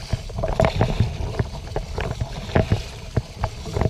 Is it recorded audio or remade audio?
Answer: recorded